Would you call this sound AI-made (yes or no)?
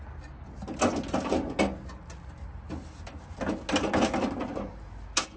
no